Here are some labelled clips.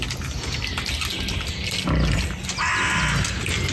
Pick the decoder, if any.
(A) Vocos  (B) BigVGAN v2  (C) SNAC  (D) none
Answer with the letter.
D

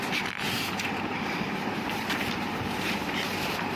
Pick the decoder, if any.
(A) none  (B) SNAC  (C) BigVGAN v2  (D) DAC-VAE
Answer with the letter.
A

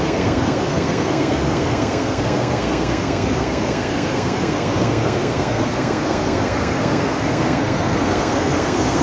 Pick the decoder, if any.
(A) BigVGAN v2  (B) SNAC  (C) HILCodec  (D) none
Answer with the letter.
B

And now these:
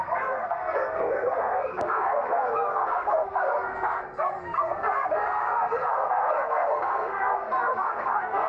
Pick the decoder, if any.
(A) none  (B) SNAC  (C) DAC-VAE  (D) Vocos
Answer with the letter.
B